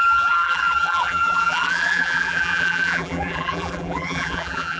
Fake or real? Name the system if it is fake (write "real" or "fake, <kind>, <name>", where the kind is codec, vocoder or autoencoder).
fake, vocoder, BigVGAN v2